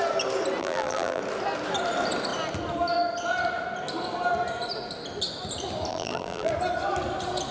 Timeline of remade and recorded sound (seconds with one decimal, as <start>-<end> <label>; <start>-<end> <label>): 0.0-0.6 recorded; 0.6-1.2 remade; 1.2-5.9 recorded; 5.9-6.5 remade; 6.5-7.5 recorded